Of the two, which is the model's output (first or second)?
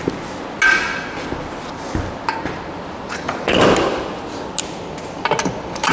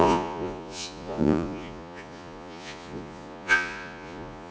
second